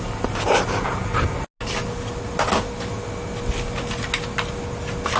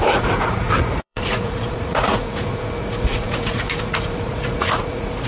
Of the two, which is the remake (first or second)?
second